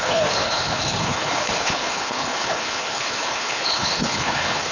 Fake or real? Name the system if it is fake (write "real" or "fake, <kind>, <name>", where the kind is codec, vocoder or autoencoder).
fake, codec, HILCodec